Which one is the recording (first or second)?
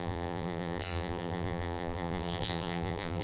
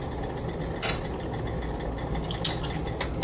second